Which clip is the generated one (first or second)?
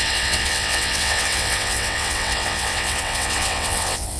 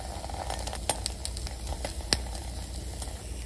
first